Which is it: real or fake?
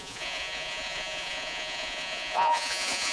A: fake